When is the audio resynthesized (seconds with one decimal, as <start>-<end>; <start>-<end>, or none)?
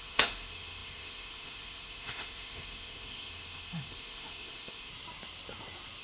0.0-4.9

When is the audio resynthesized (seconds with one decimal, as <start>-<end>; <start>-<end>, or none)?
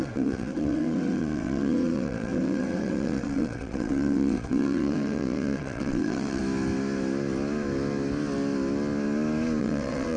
0.0-6.4; 9.6-10.2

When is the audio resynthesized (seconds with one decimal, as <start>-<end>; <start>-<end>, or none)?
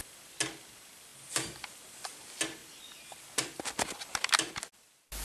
none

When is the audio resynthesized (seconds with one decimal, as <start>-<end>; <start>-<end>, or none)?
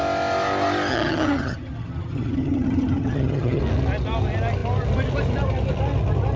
0.9-3.6